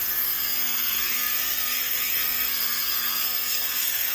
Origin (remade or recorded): remade